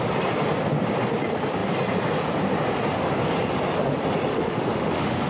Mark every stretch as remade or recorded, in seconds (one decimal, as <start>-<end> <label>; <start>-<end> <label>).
0.0-4.3 recorded; 4.3-5.3 remade